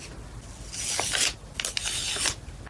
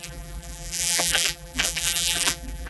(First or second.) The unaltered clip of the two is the first